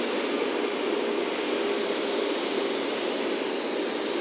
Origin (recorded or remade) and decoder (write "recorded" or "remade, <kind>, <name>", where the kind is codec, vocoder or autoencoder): recorded